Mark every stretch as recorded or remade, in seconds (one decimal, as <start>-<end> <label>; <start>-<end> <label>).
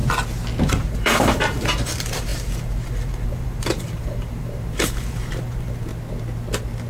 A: 0.0-0.7 recorded; 0.7-5.9 remade; 5.9-6.9 recorded